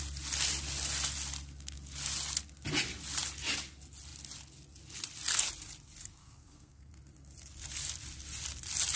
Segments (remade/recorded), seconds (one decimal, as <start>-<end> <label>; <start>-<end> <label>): 0.0-6.2 recorded; 6.2-6.9 remade; 6.9-9.0 recorded